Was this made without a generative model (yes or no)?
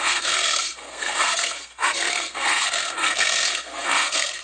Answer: no